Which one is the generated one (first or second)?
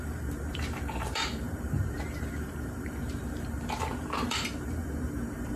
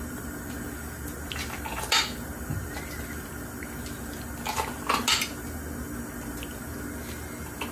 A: first